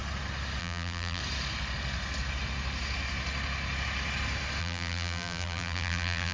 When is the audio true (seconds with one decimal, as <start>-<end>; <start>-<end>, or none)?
0.0-0.6; 1.2-4.6